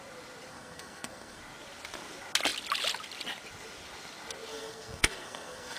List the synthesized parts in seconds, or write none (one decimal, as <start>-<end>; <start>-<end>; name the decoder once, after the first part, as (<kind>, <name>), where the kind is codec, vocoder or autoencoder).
0.5-1.4 (codec, SNAC); 4.5-5.8